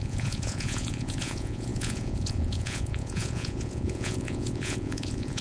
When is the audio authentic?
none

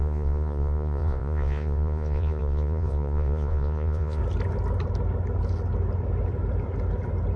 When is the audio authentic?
4.2-7.4

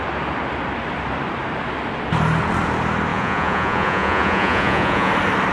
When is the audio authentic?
0.0-3.1; 5.1-5.5

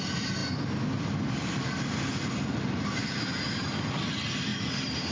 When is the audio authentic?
0.0-5.1

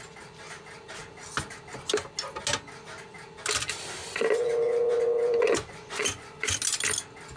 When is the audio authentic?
0.0-4.0; 6.5-7.4

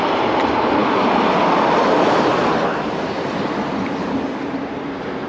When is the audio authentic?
0.0-5.3